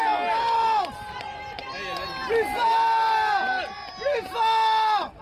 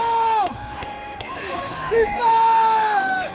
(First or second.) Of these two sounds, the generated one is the second